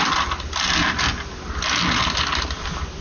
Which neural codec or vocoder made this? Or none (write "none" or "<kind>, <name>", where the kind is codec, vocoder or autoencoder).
none